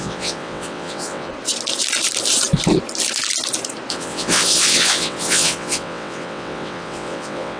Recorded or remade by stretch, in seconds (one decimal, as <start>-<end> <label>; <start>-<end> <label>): 0.0-1.3 remade; 1.3-3.9 recorded; 3.9-7.6 remade